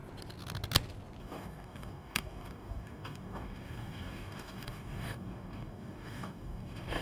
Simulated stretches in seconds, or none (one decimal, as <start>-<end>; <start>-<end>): 1.2-7.0